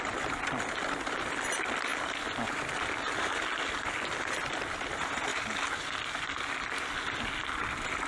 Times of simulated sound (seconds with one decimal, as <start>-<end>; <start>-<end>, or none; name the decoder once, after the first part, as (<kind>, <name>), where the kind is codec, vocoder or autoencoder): none